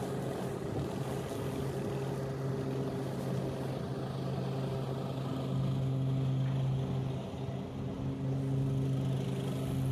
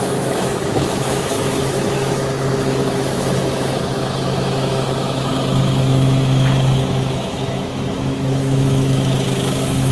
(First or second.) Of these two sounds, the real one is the first